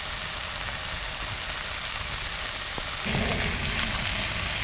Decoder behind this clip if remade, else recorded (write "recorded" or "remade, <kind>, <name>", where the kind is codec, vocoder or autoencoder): recorded